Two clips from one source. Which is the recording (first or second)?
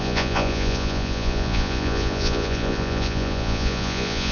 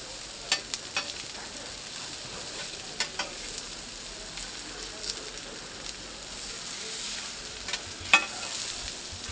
second